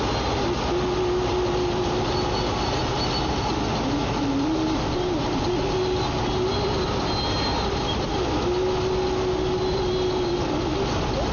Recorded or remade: recorded